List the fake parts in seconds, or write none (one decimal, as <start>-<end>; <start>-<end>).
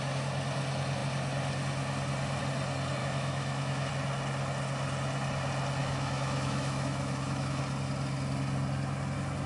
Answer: 3.0-3.9; 5.8-7.6